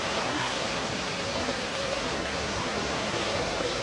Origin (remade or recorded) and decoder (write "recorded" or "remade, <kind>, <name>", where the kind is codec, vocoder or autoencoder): remade, codec, SNAC